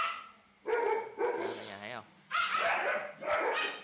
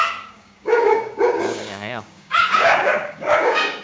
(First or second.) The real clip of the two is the first